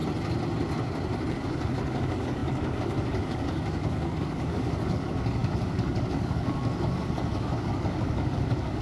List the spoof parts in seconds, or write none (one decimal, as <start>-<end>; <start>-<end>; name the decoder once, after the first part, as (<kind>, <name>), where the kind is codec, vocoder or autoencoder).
1.3-8.8 (codec, DAC)